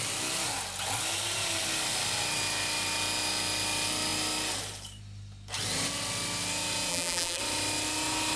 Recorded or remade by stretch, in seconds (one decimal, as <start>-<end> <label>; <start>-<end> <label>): 0.0-6.9 recorded; 6.9-7.4 remade; 7.4-8.4 recorded